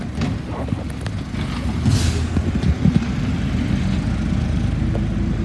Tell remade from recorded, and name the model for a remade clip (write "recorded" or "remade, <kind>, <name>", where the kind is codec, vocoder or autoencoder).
recorded